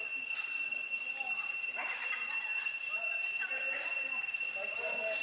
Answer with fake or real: real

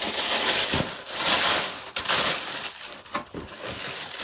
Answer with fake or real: real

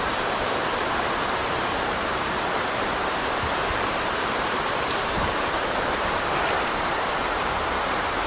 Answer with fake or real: fake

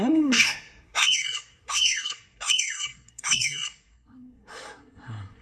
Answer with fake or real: fake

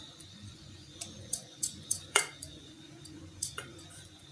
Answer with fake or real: fake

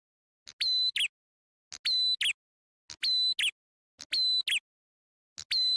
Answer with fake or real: real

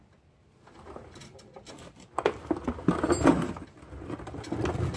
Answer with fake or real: real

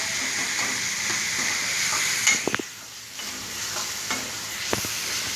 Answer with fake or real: fake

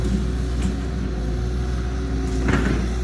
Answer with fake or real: real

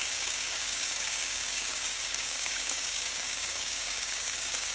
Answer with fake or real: fake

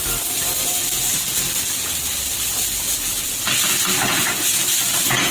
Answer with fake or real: real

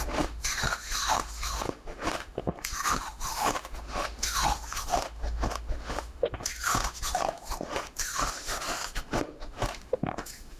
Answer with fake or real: fake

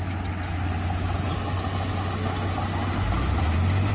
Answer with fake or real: real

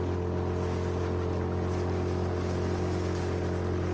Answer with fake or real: real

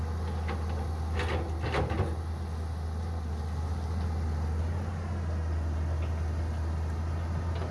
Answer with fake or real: real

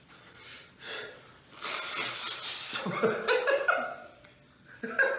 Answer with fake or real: real